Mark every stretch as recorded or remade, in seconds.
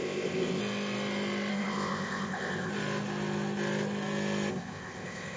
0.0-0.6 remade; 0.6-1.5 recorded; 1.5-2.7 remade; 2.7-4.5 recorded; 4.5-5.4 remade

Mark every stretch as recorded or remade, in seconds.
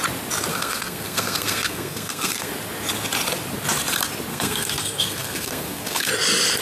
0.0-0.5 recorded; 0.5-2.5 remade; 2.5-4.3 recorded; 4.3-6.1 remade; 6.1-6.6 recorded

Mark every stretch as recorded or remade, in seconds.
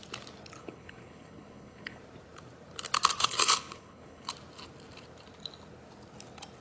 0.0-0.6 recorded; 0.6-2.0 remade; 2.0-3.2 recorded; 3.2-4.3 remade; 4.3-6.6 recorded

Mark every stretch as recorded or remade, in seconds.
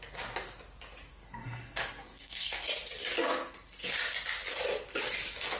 0.0-1.1 recorded; 1.1-2.7 remade; 2.7-5.6 recorded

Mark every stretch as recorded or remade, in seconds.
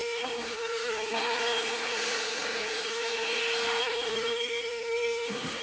0.0-3.4 remade; 3.4-3.8 recorded; 3.8-5.6 remade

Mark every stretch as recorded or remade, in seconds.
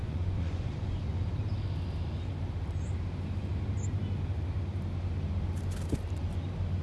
0.0-1.2 remade; 1.2-6.8 recorded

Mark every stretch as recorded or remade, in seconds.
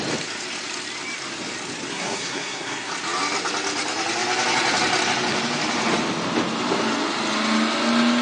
0.0-1.9 recorded; 1.9-2.9 remade; 2.9-8.2 recorded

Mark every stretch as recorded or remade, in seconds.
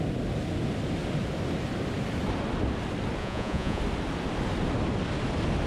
0.0-3.2 recorded; 3.2-3.8 remade; 3.8-5.7 recorded